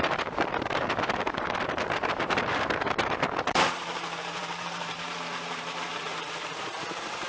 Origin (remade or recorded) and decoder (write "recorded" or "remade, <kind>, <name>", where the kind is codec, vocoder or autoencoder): remade, vocoder, BigVGAN v2